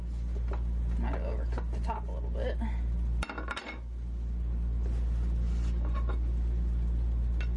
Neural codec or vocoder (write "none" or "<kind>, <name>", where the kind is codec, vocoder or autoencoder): none